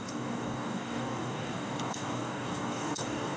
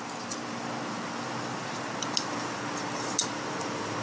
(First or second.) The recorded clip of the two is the second